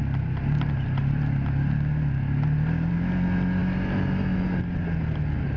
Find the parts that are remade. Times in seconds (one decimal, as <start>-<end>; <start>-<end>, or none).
none